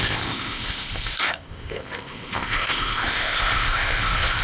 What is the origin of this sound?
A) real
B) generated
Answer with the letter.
B